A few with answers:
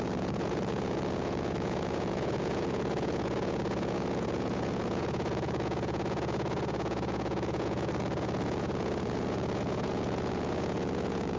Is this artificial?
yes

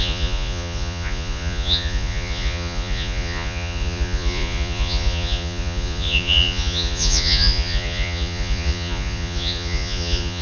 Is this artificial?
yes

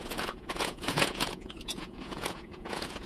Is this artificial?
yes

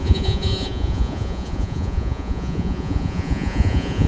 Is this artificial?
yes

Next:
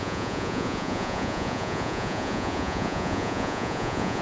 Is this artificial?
yes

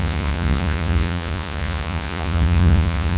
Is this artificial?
yes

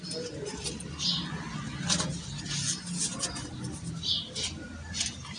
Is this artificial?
no